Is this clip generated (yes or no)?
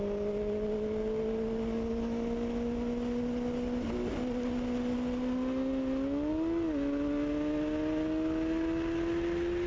no